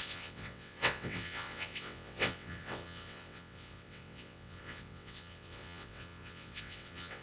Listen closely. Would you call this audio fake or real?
fake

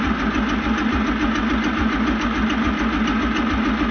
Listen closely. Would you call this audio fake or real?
real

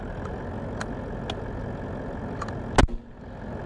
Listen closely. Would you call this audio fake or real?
real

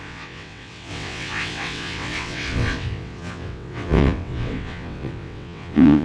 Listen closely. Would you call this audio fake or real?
fake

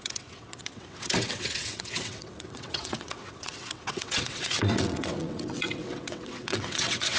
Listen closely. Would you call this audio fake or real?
fake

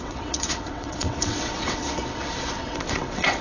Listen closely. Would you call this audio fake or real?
fake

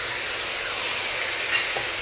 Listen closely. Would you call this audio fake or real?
real